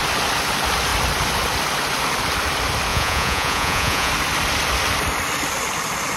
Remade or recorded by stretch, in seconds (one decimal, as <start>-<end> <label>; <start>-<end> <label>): 0.0-2.9 recorded; 2.9-4.1 remade; 4.1-6.2 recorded

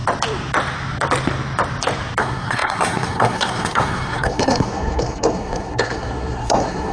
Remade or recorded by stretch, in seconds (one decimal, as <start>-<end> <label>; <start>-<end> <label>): 0.0-2.2 recorded; 2.2-6.9 remade

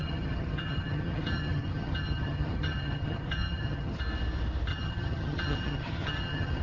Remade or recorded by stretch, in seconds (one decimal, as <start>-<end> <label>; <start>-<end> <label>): 0.0-4.0 remade; 4.0-4.7 recorded; 4.7-6.6 remade

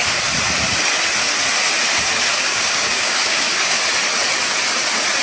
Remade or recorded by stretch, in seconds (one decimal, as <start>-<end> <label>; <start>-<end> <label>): 0.0-2.3 recorded; 2.3-3.8 remade; 3.8-5.2 recorded

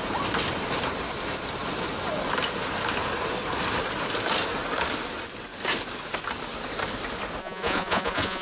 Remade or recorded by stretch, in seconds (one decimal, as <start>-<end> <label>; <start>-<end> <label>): 0.0-7.4 recorded; 7.4-8.4 remade

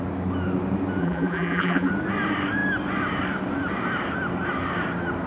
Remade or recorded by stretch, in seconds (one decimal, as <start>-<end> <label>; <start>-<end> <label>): 0.0-1.0 recorded; 1.0-1.9 remade; 1.9-5.3 recorded

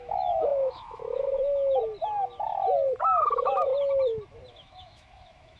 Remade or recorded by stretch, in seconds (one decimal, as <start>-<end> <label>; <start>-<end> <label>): 0.0-1.8 remade; 1.8-3.0 recorded; 3.0-3.7 remade; 3.7-4.5 recorded; 4.5-5.6 remade

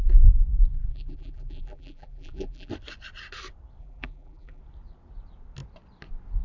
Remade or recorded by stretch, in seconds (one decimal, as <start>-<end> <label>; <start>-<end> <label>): 0.0-0.7 recorded; 0.7-2.7 remade; 2.7-3.8 recorded; 3.8-4.6 remade; 4.6-6.4 recorded